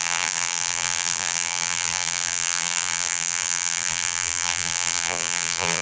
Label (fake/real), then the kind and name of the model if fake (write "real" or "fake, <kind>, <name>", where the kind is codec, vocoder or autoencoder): fake, vocoder, BigVGAN v2